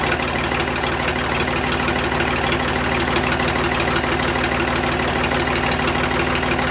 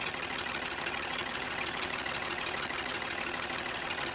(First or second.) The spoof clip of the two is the second